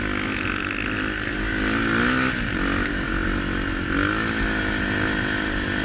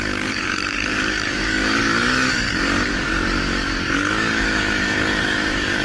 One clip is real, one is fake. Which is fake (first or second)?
second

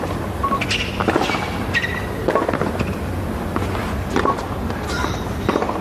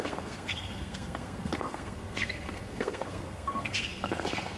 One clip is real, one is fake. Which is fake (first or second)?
second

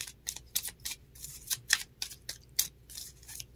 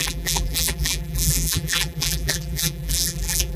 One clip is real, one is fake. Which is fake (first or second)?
second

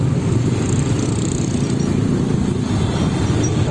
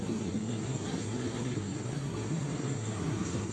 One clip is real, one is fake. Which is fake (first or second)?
second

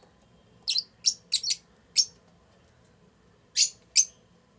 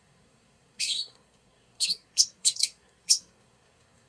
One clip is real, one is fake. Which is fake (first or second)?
second